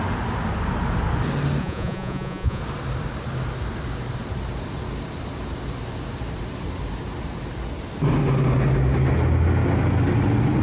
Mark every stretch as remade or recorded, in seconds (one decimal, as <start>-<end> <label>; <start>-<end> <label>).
0.0-1.6 recorded; 1.6-2.6 remade; 2.6-10.6 recorded